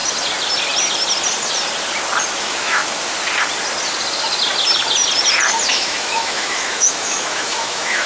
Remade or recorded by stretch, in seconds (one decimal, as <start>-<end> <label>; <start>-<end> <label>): 0.0-2.4 recorded; 2.4-2.8 remade; 2.8-5.7 recorded; 5.7-8.1 remade